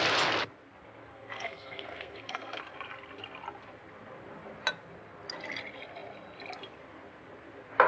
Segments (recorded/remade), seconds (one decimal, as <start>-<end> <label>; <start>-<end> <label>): 0.0-1.1 recorded; 1.1-2.6 remade; 2.6-7.9 recorded